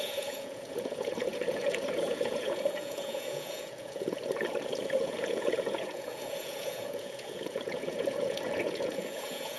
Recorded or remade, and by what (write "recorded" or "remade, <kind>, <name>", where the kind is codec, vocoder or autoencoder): remade, vocoder, Vocos